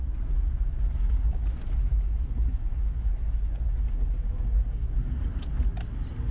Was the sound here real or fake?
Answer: real